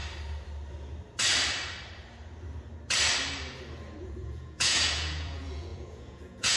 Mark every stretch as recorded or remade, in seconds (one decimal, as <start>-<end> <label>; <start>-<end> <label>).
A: 0.0-4.0 recorded; 4.0-6.6 remade